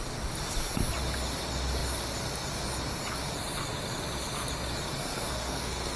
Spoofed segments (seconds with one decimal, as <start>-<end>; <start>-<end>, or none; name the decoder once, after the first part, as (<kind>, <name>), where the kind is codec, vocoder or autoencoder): 5.0-6.0 (codec, SNAC)